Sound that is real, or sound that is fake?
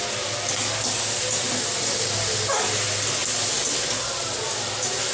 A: real